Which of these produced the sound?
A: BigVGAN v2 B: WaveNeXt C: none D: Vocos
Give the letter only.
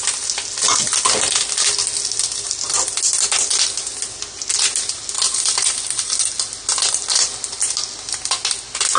C